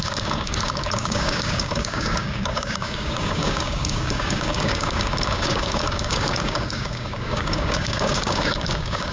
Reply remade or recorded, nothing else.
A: remade